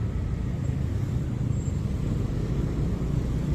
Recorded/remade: recorded